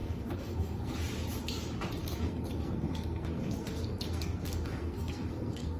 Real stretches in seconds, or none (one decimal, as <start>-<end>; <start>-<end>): 1.0-2.0